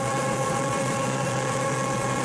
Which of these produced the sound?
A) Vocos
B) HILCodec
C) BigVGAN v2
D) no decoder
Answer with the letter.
A